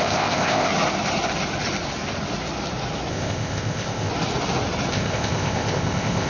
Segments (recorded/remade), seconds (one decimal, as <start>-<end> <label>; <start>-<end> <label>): 0.0-0.7 remade; 0.7-3.1 recorded; 3.1-4.1 remade; 4.1-4.9 recorded; 4.9-6.3 remade